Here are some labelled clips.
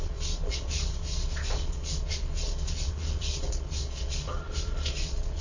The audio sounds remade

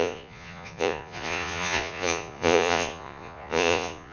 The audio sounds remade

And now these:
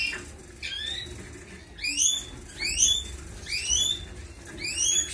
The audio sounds recorded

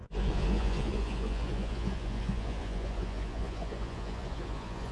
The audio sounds remade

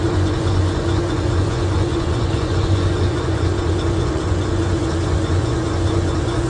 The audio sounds remade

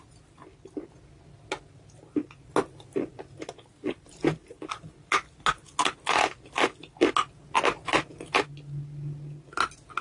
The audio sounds recorded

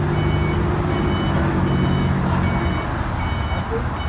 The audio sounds recorded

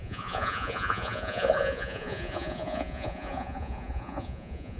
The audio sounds remade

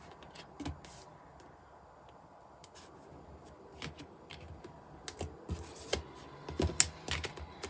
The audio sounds recorded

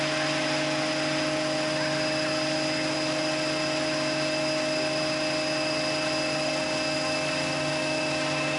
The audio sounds recorded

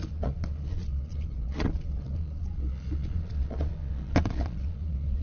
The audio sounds remade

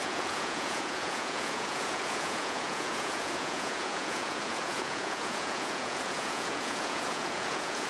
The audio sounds remade